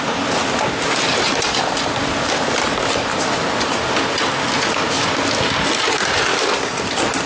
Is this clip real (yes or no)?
yes